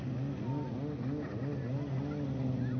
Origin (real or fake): real